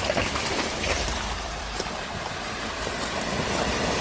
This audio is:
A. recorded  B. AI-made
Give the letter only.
B